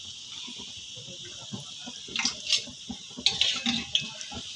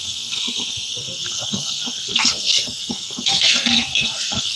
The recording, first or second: first